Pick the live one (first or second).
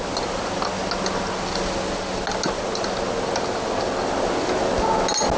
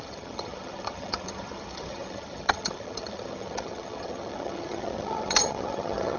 first